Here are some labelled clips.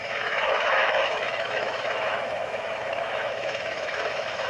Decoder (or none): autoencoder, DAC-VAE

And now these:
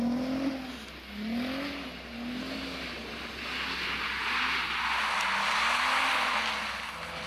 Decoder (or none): none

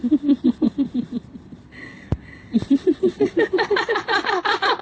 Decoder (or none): vocoder, BigVGAN v2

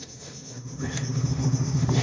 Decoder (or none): autoencoder, DAC-VAE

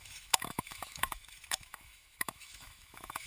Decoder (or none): autoencoder, DAC-VAE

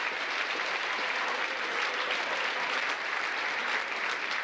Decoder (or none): none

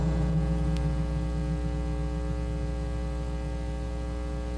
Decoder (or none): none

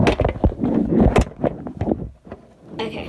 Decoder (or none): none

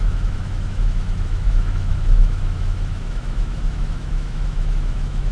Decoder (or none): autoencoder, DAC-VAE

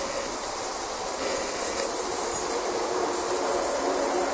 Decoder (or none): none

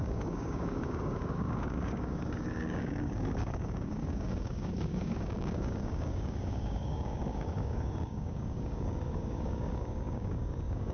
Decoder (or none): codec, DAC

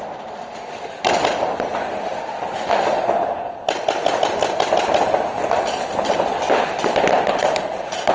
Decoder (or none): none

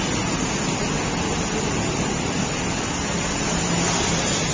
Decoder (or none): none